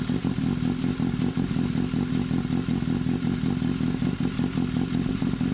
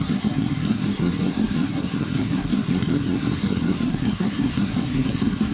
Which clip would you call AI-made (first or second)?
second